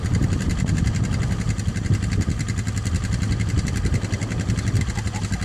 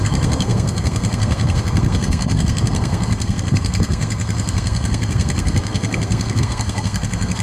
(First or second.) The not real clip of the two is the second